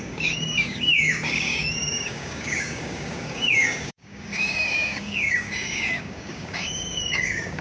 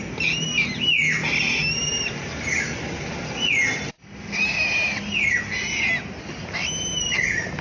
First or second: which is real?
second